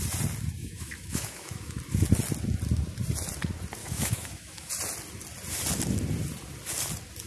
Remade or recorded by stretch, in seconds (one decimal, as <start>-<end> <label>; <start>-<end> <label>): 0.0-0.6 recorded; 0.6-1.8 remade; 1.8-3.8 recorded; 3.8-4.7 remade; 4.7-7.3 recorded